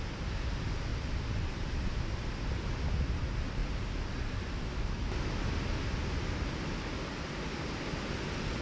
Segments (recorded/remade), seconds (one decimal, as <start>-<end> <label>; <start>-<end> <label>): 0.0-0.9 recorded; 0.9-2.5 remade; 2.5-8.6 recorded